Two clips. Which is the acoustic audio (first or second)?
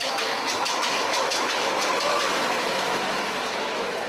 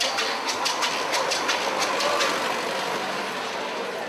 second